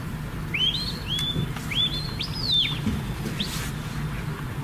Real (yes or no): yes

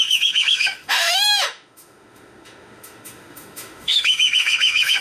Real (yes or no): no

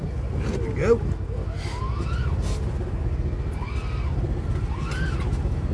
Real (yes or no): yes